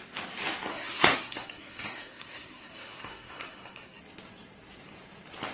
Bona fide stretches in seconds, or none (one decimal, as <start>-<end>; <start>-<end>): 0.0-0.7; 4.0-5.5